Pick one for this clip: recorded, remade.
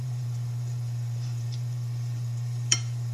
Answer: remade